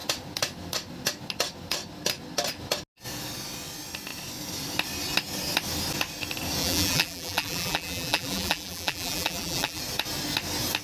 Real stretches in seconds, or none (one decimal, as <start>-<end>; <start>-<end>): 0.0-6.6; 9.8-10.8

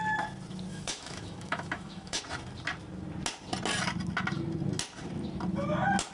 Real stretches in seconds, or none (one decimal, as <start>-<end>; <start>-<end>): 0.0-0.7; 2.2-6.1

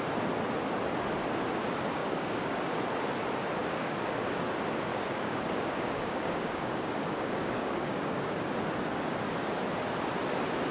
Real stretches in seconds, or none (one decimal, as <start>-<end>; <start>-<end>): 0.0-2.0; 2.8-3.6; 4.4-4.9; 8.4-10.7